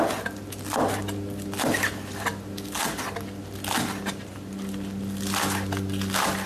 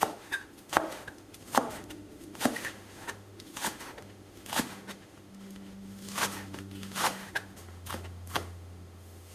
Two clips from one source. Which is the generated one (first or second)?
second